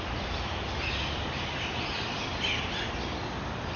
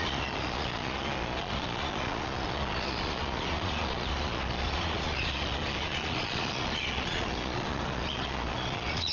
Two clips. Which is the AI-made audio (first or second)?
second